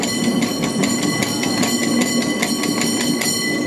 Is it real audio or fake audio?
real